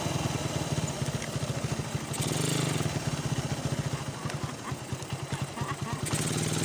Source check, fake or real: real